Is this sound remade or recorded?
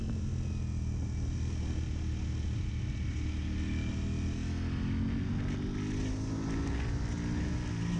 recorded